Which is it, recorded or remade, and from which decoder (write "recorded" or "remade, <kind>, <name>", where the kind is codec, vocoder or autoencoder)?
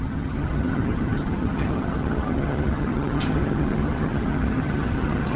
remade, vocoder, HiFi-GAN